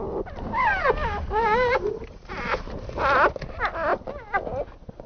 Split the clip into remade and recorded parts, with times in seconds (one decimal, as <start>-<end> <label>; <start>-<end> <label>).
0.0-0.7 recorded; 0.7-2.9 remade; 2.9-5.1 recorded